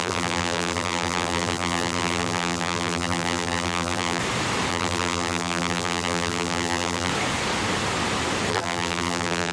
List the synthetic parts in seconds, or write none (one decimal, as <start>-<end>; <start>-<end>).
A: 0.0-4.2; 4.7-7.1; 8.5-9.5

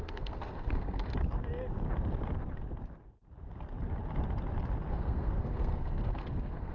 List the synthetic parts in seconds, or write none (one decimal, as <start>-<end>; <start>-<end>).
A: 0.0-1.1; 4.9-6.7

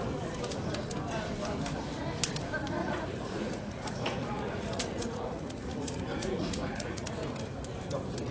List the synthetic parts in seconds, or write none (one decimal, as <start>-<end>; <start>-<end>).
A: 2.8-7.1

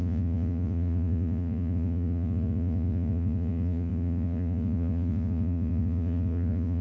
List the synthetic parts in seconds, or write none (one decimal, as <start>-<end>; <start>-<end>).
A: 0.0-6.8

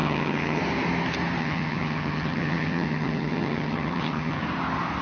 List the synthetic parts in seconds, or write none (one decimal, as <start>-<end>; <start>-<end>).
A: 0.0-0.6; 1.4-4.4

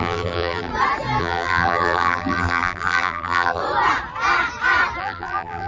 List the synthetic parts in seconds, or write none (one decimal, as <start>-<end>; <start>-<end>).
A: 0.0-0.7; 1.2-3.6; 5.0-5.7